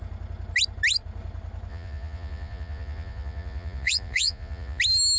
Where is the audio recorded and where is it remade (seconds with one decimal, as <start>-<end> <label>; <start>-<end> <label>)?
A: 0.0-1.7 recorded; 1.7-4.8 remade; 4.8-5.2 recorded